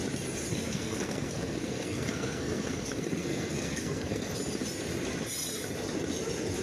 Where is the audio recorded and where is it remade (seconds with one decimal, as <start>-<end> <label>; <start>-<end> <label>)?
0.0-0.5 recorded; 0.5-4.3 remade; 4.3-6.6 recorded